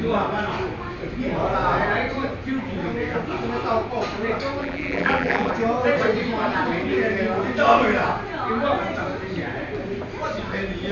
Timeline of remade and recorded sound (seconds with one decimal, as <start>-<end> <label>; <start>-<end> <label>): 0.0-4.6 recorded; 4.6-5.5 remade; 5.5-10.9 recorded